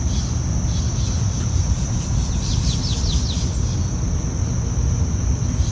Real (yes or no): yes